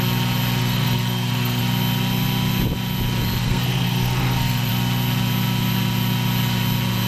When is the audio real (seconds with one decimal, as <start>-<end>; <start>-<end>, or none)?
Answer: 0.0-0.6; 1.6-3.4; 4.7-7.1